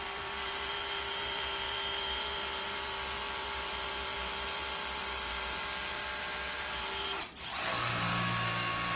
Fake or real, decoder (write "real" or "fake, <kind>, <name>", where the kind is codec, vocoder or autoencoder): fake, vocoder, BigVGAN v2